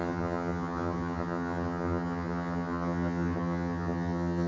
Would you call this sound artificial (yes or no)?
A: yes